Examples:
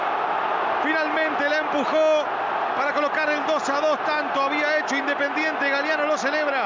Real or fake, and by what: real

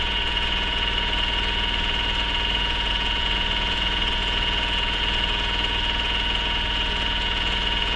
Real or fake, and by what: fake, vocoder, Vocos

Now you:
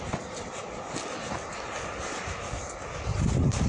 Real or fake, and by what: real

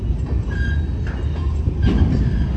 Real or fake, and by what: real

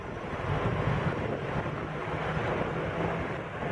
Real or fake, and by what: real